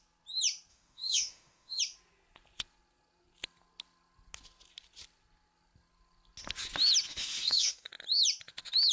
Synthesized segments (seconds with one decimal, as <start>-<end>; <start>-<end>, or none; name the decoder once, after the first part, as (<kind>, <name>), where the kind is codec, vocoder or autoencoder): 0.7-1.8 (autoencoder, DAC-VAE); 7.1-7.9